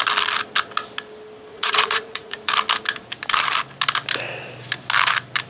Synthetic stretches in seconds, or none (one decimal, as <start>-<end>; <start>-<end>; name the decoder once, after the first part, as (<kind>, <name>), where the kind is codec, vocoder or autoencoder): 1.5-2.5 (vocoder, Vocos)